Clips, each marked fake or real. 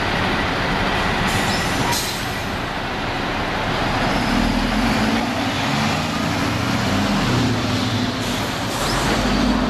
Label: real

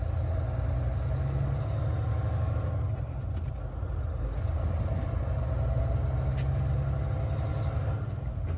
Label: real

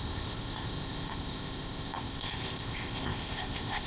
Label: fake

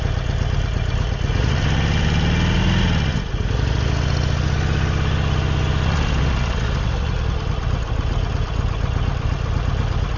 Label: real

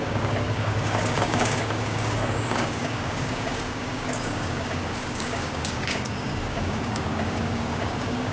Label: fake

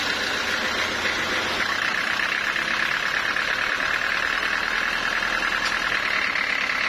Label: real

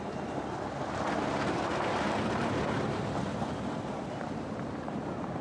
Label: real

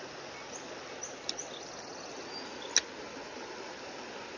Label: real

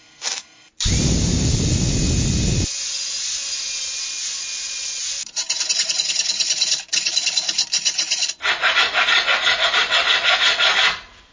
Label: real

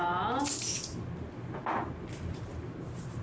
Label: real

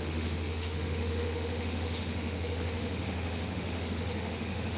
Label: fake